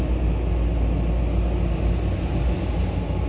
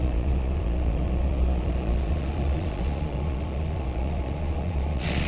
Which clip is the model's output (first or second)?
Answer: second